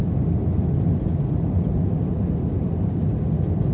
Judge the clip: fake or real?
real